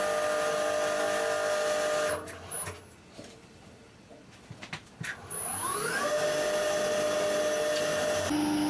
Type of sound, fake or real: real